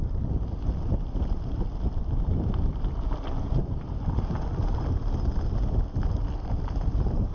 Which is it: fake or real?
fake